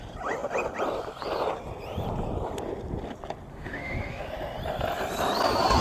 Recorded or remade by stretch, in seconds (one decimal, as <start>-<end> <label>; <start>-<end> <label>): 0.0-3.5 recorded; 3.5-4.3 remade; 4.3-5.8 recorded